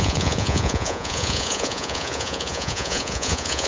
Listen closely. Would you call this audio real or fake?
fake